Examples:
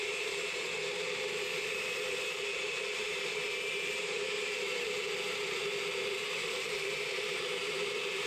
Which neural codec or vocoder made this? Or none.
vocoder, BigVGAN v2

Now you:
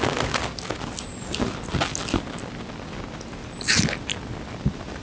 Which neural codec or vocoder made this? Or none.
none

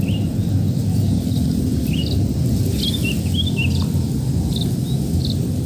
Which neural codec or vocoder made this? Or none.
none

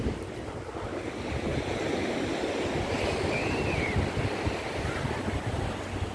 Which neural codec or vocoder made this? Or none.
none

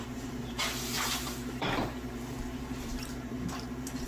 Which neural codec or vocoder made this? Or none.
vocoder, BigVGAN v2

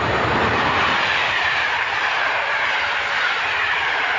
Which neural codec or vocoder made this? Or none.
vocoder, BigVGAN v2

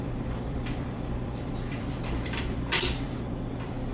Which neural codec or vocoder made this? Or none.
vocoder, BigVGAN v2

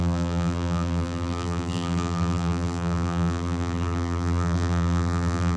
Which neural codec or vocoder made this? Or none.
vocoder, BigVGAN v2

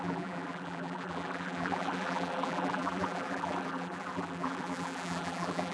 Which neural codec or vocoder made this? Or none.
vocoder, BigVGAN v2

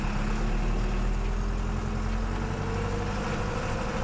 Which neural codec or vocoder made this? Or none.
none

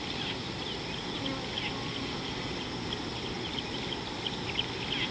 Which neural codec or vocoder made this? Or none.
none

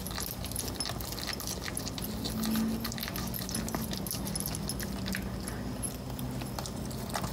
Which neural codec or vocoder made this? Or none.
none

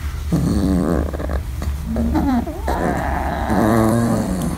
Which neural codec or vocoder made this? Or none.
vocoder, BigVGAN v2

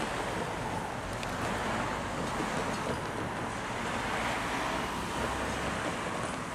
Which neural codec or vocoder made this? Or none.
none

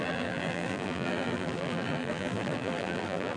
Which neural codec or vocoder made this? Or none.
vocoder, BigVGAN v2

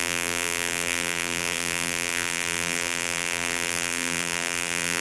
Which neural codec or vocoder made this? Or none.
vocoder, BigVGAN v2